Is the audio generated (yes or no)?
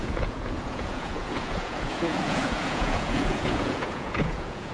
yes